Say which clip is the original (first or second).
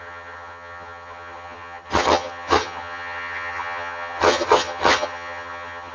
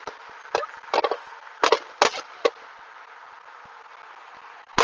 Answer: second